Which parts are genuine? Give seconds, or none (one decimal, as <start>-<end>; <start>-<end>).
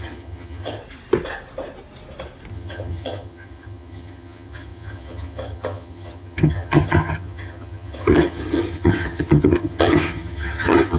0.8-2.5